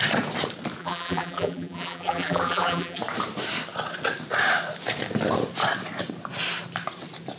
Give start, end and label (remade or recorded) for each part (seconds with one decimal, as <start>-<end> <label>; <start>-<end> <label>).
0.0-0.8 recorded; 0.8-3.0 remade; 3.0-7.4 recorded